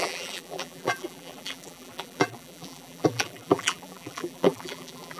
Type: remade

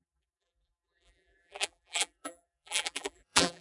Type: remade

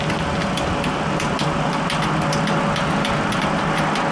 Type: recorded